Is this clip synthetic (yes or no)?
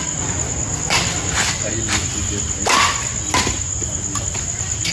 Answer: no